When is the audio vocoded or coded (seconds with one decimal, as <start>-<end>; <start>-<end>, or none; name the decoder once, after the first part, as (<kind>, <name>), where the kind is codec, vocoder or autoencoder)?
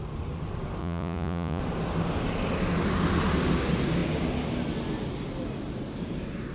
0.8-1.6 (vocoder, Vocos)